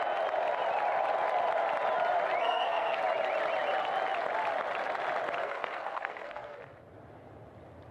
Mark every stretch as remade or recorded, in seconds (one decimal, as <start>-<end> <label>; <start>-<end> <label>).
0.0-2.4 recorded; 2.4-3.0 remade; 3.0-5.4 recorded; 5.4-6.6 remade; 6.6-7.9 recorded